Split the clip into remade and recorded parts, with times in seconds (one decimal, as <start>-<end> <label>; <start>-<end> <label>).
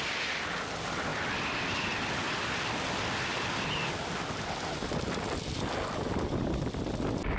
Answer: 0.0-7.4 recorded